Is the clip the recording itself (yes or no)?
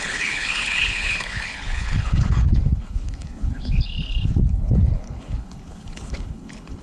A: no